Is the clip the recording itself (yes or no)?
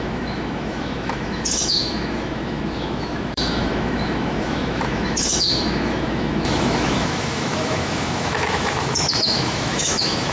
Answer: no